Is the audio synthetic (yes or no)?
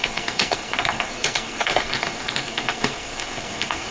yes